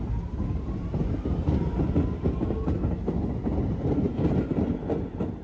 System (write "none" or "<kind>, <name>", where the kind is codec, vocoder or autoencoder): none